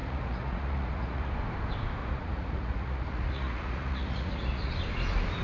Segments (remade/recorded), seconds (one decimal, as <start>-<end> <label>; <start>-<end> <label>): 0.0-1.3 remade; 1.3-2.0 recorded; 2.0-4.7 remade; 4.7-5.4 recorded